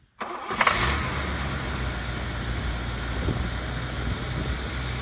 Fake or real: real